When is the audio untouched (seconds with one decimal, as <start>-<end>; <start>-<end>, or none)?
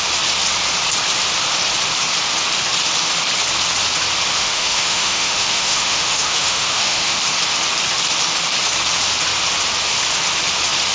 0.0-4.3; 7.2-10.9